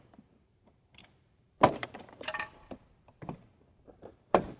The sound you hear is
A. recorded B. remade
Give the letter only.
B